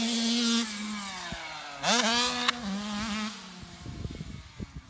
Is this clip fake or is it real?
real